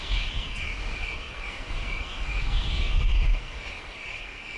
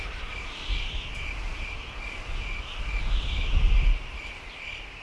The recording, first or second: second